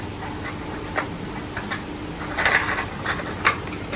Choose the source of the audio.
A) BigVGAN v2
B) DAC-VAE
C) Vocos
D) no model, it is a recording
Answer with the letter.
D